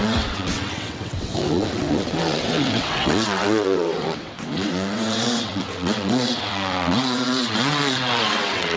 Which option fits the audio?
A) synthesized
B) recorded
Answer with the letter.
A